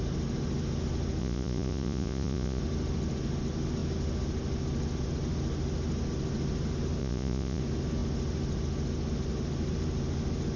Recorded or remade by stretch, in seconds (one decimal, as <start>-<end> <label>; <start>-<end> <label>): 0.0-1.2 recorded; 1.2-2.6 remade; 2.6-7.0 recorded; 7.0-7.6 remade; 7.6-10.6 recorded